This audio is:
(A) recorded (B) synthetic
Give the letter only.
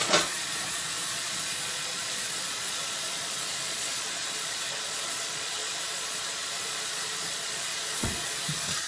B